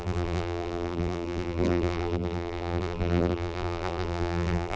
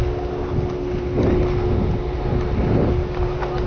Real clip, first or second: second